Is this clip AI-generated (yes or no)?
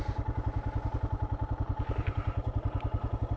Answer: no